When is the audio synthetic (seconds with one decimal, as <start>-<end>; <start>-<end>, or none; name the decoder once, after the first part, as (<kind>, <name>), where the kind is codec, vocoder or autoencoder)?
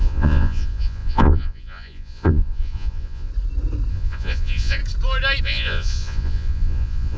0.0-3.3 (vocoder, Vocos); 3.9-4.8; 5.4-7.2